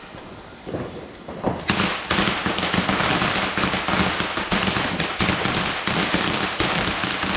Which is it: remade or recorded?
remade